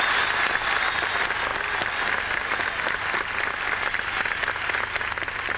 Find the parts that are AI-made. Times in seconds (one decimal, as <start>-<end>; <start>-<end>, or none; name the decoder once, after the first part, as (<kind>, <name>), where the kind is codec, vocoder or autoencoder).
none